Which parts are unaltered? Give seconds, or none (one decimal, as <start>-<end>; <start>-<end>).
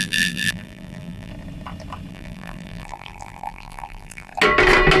1.3-2.1; 4.3-5.0